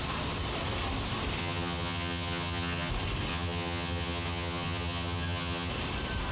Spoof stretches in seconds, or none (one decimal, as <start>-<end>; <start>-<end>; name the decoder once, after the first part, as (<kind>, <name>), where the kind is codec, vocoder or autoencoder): 1.4-2.9 (vocoder, HiFi-GAN); 3.3-5.7